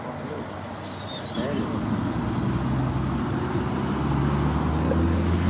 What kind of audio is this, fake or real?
real